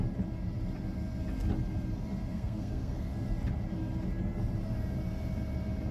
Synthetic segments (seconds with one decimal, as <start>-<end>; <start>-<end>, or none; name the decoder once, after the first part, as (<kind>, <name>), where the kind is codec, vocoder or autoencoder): 2.3-3.1 (codec, SNAC)